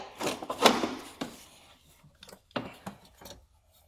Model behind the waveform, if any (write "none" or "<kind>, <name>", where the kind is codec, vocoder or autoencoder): vocoder, BigVGAN v2